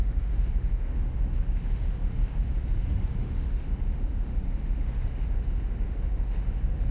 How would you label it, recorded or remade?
remade